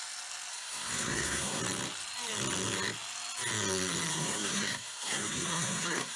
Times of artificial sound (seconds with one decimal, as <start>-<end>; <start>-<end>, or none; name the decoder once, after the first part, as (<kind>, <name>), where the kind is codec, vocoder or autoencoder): 0.5-1.6 (codec, SNAC); 4.1-6.2